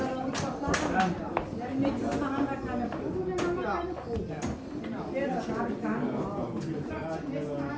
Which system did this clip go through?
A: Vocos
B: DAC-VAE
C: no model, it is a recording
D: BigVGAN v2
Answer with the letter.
C